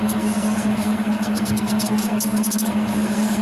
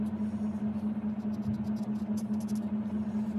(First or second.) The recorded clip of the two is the second